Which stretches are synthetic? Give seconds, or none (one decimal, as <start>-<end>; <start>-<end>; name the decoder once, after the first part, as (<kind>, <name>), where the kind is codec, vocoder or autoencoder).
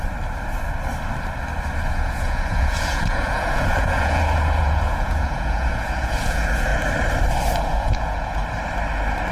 1.9-6.7 (vocoder, Vocos); 7.6-8.4